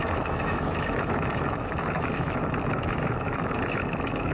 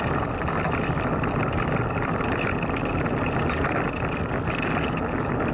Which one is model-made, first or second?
first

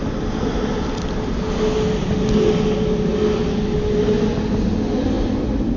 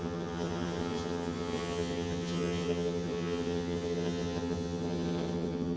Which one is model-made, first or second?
second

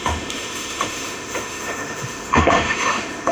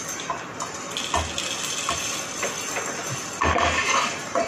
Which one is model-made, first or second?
first